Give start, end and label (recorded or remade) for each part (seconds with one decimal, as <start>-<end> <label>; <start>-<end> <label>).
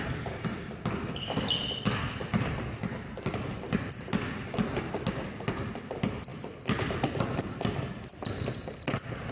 0.0-9.3 recorded